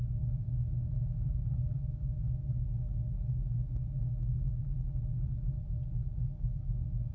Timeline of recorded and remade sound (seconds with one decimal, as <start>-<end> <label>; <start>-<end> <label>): 0.0-4.6 remade; 4.6-6.2 recorded; 6.2-7.1 remade